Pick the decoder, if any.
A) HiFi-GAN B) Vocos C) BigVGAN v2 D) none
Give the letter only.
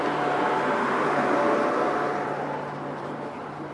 D